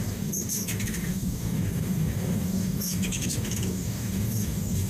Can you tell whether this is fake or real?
fake